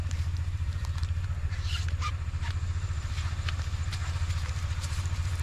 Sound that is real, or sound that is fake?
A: fake